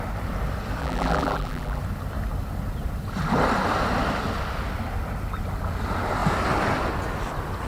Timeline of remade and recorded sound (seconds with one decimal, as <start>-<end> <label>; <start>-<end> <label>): 0.0-0.8 recorded; 0.8-1.8 remade; 1.8-7.7 recorded